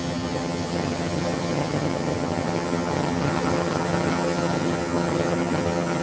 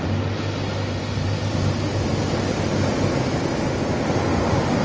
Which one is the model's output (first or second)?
first